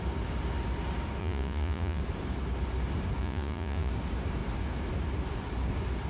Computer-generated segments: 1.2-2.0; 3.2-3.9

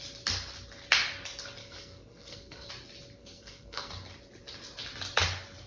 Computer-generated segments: 1.6-2.7; 3.2-3.9